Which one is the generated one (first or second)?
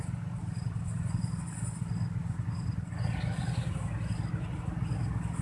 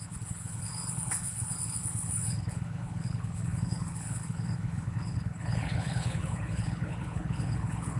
second